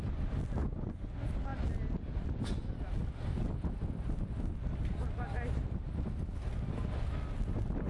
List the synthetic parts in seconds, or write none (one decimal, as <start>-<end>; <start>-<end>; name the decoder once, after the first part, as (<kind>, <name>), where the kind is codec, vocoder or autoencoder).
0.6-1.1 (vocoder, Vocos)